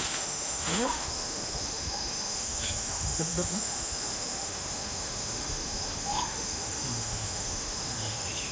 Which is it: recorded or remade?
remade